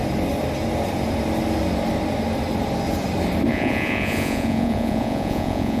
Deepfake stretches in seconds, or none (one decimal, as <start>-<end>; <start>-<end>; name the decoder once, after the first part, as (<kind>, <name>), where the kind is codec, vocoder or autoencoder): 3.5-5.8 (vocoder, Vocos)